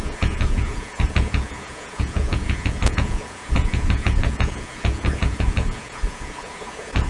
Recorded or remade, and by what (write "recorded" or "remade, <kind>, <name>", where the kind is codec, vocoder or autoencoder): remade, vocoder, Vocos